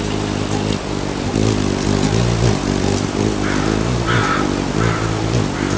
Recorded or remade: recorded